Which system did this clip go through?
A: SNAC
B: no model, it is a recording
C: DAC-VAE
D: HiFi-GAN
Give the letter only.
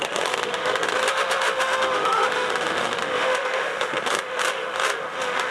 C